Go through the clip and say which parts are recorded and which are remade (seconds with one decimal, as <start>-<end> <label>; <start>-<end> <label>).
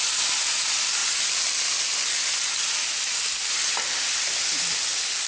0.0-5.3 recorded